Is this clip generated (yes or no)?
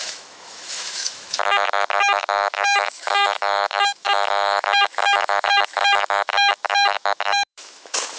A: yes